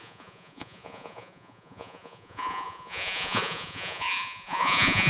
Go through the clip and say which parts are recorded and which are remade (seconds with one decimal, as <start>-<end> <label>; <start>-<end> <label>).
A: 0.0-5.1 remade

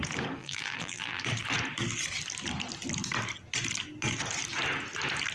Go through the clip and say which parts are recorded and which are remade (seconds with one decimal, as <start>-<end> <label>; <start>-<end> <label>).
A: 0.0-0.4 recorded; 0.4-1.2 remade; 1.2-5.3 recorded

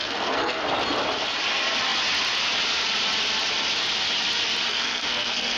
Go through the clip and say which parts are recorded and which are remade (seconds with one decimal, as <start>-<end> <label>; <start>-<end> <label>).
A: 0.0-0.6 remade; 0.6-4.7 recorded; 4.7-5.6 remade

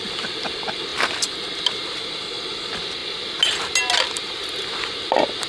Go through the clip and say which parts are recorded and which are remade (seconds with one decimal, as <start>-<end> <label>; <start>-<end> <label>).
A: 0.0-5.5 recorded

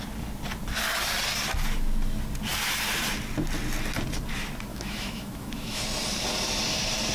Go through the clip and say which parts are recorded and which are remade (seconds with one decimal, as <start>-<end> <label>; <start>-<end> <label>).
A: 0.0-4.7 recorded; 4.7-5.8 remade; 5.8-7.1 recorded

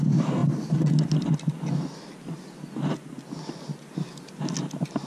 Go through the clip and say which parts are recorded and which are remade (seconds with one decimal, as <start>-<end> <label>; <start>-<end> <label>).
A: 0.0-5.1 recorded

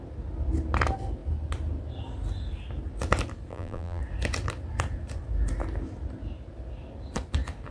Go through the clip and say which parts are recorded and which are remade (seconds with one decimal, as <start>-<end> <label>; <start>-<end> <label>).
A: 0.0-3.5 recorded; 3.5-4.0 remade; 4.0-7.7 recorded

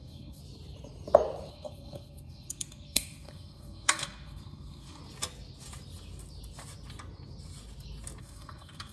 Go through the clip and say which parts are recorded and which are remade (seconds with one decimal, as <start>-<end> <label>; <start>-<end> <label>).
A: 0.0-0.4 remade; 0.4-1.5 recorded; 1.5-5.0 remade; 5.0-8.2 recorded; 8.2-8.9 remade